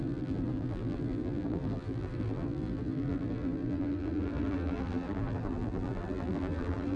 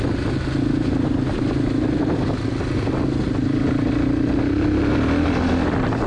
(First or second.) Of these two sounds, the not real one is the first